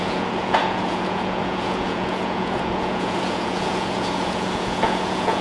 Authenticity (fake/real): fake